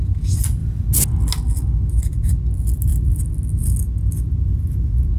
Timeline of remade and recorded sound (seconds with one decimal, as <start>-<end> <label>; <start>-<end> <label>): 0.0-5.2 recorded